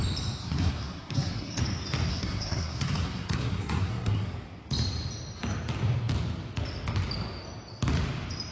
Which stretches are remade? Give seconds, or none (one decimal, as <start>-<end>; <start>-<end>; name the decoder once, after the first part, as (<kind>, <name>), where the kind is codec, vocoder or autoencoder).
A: 0.4-1.6 (codec, SNAC); 2.1-4.3